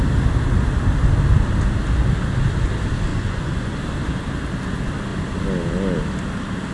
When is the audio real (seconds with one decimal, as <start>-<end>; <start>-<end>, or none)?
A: 0.0-3.1; 3.8-6.7